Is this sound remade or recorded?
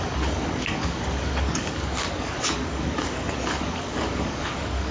remade